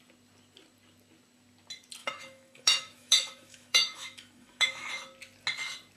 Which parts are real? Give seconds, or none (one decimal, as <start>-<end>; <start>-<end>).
0.0-2.0; 4.9-6.0